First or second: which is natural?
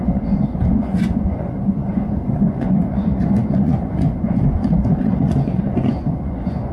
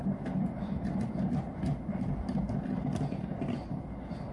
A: second